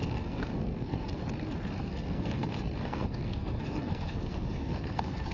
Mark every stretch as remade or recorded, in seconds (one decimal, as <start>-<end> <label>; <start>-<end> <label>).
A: 0.0-1.2 remade; 1.2-1.8 recorded; 1.8-5.3 remade